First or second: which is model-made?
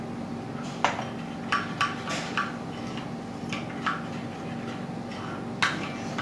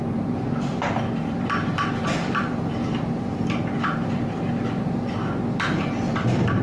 second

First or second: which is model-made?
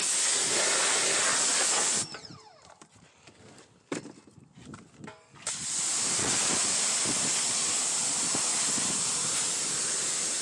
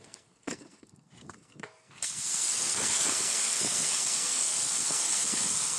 second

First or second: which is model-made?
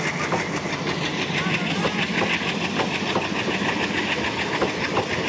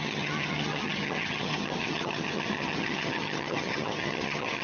second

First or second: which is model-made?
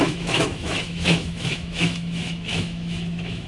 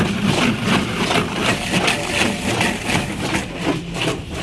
first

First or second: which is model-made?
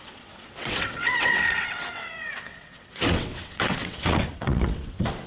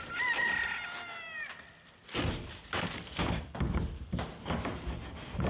first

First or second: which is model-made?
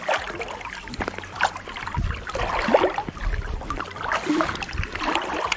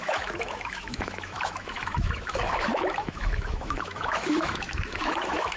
second